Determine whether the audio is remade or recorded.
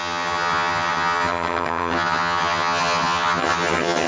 remade